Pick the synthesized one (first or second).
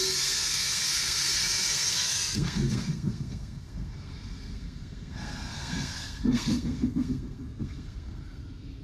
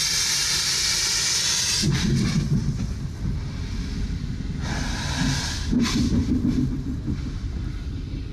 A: first